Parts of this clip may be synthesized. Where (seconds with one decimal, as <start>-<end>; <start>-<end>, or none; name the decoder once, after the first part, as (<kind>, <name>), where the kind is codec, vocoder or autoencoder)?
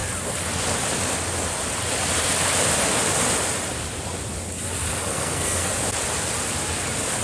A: 5.1-5.7 (codec, SNAC)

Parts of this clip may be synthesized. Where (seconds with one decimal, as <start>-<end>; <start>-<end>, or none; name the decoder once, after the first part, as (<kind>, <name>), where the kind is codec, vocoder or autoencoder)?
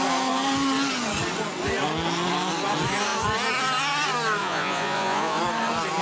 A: 4.4-5.4 (vocoder, Vocos)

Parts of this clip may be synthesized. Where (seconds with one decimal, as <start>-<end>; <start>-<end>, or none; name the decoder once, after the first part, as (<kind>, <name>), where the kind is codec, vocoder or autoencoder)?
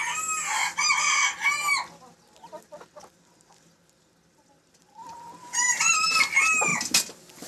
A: none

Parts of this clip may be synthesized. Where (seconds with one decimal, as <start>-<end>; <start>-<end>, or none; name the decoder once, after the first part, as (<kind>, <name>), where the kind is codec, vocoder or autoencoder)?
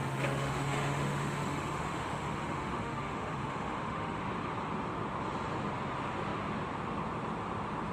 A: 0.0-4.2 (autoencoder, DAC-VAE)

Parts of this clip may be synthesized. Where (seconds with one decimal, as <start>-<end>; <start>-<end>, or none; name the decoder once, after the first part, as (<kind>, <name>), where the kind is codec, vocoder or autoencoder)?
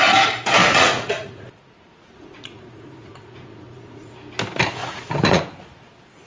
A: 0.6-4.1 (vocoder, Vocos); 4.8-5.4